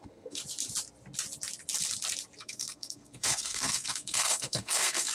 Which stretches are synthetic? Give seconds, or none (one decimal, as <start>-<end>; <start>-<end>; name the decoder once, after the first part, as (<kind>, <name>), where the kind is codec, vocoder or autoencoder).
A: 0.0-0.4 (codec, SNAC); 2.4-5.1